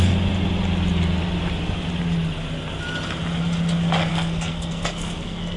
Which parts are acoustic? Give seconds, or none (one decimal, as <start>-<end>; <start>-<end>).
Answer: 0.0-4.1

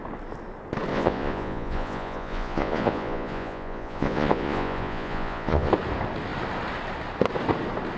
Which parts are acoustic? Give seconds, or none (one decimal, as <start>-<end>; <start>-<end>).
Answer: 0.0-0.9; 5.7-8.0

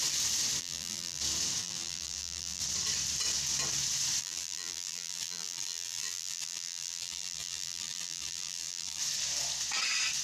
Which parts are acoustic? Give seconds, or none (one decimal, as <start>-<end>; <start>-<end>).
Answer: 0.0-0.6; 1.2-1.6; 2.6-4.2; 9.0-10.2

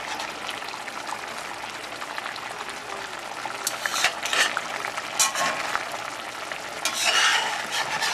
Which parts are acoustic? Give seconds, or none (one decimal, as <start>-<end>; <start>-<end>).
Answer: 0.0-8.1

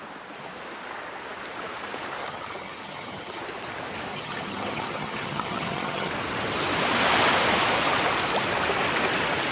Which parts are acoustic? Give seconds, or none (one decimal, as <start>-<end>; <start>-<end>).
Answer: 0.0-2.2; 3.4-4.1; 6.1-9.5

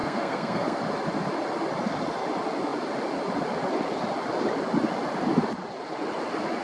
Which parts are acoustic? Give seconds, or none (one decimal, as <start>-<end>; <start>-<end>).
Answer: 0.8-6.6

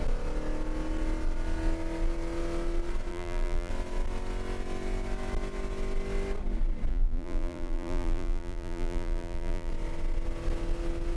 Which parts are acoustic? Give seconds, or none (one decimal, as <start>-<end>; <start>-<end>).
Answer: 0.0-3.1; 3.7-6.9; 9.7-11.2